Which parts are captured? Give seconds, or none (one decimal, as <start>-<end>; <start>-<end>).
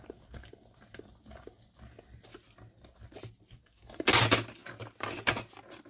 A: 0.0-3.6; 4.1-5.9